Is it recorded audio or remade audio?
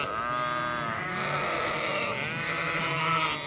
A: recorded